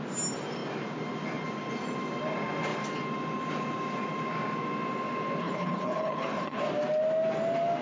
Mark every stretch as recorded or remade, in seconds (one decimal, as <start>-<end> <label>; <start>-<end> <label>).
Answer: 0.0-5.4 recorded; 5.4-6.6 remade; 6.6-7.8 recorded